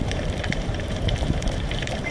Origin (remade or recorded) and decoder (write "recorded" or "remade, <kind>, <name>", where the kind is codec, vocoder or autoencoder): remade, vocoder, BigVGAN v2